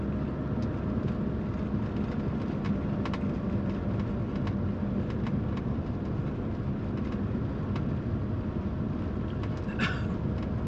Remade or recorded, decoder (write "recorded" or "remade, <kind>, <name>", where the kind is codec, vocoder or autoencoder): recorded